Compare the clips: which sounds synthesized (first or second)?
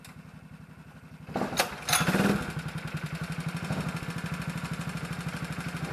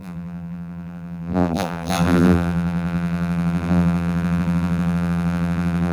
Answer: second